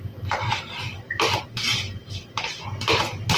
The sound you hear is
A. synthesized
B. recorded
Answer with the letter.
B